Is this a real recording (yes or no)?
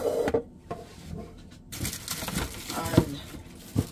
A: yes